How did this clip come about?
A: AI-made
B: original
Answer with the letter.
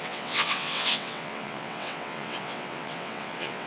A